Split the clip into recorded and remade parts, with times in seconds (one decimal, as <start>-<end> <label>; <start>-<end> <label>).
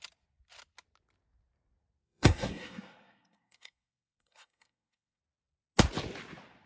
0.0-2.0 recorded; 2.0-5.2 remade; 5.2-6.7 recorded